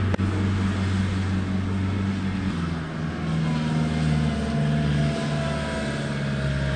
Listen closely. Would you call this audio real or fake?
real